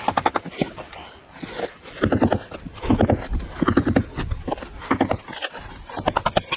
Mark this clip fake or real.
real